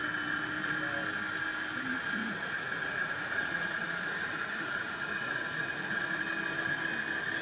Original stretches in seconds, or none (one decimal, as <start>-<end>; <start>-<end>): 0.0-2.2; 6.2-7.4